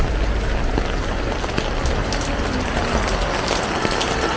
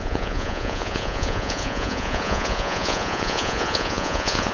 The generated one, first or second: second